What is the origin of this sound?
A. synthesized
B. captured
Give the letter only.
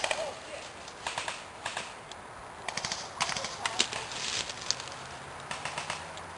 B